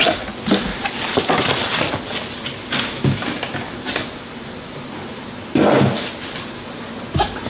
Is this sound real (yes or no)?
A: yes